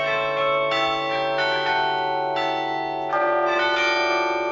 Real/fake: real